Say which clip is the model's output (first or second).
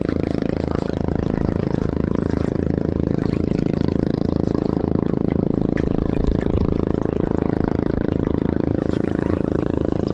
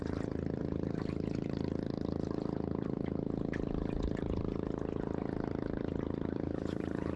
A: first